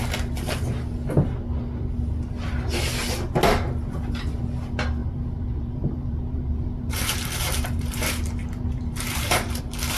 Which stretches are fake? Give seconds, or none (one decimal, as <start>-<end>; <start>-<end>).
5.0-9.6